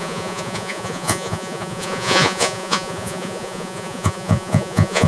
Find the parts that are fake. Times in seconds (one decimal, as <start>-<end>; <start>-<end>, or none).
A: 0.0-5.1